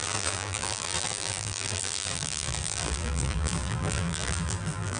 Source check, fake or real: fake